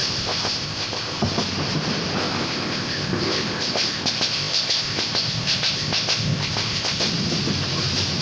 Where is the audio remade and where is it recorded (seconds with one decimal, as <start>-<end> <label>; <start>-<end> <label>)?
0.0-1.3 remade; 1.3-2.2 recorded; 2.2-7.0 remade; 7.0-8.2 recorded

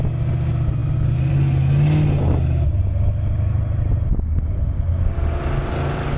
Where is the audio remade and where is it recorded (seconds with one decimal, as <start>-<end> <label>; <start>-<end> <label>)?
0.0-6.2 recorded

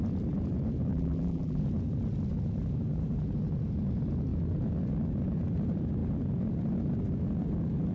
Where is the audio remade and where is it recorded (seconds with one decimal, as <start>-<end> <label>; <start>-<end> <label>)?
0.0-0.9 recorded; 0.9-1.6 remade; 1.6-7.9 recorded

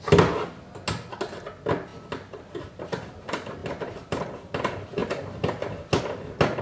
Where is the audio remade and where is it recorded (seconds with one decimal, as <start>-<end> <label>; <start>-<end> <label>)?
0.0-3.6 recorded; 3.6-4.2 remade; 4.2-6.6 recorded

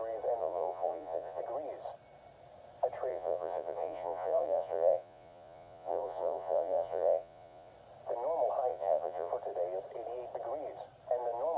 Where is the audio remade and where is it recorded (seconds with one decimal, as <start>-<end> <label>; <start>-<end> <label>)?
0.0-0.4 recorded; 0.4-1.4 remade; 1.4-3.1 recorded; 3.1-7.7 remade; 7.7-8.7 recorded; 8.7-9.3 remade; 9.3-11.6 recorded

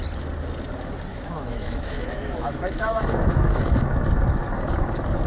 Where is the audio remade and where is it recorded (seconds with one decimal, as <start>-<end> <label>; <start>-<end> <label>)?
0.0-1.1 recorded; 1.1-3.8 remade; 3.8-5.3 recorded

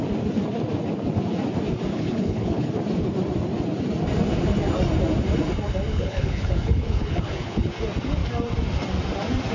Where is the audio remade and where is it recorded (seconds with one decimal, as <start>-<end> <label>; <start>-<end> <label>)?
0.0-1.9 recorded; 1.9-2.7 remade; 2.7-5.9 recorded; 5.9-7.7 remade; 7.7-9.5 recorded